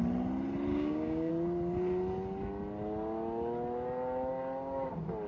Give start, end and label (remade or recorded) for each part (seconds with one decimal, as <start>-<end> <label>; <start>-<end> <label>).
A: 0.0-0.7 recorded; 0.7-1.3 remade; 1.3-5.3 recorded